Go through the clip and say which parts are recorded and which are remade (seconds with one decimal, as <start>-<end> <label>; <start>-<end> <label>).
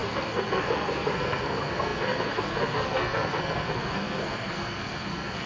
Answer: 0.0-5.5 remade